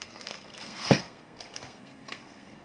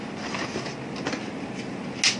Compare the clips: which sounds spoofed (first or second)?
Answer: first